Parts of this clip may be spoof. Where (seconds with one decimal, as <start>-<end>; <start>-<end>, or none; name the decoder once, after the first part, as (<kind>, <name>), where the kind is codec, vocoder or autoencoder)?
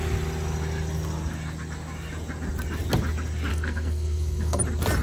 3.5-4.6 (codec, SNAC)